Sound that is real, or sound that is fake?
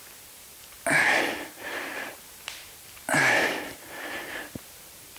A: fake